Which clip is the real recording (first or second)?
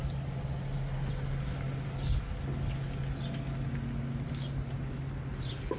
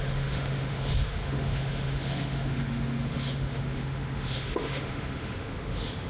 first